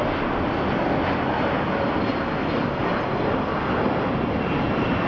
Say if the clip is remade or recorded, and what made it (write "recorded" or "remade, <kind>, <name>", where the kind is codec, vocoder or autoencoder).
recorded